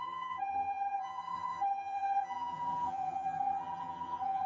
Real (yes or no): no